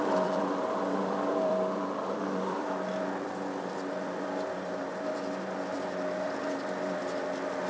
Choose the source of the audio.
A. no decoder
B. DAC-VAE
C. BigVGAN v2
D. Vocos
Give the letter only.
C